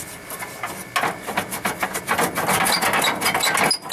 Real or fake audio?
real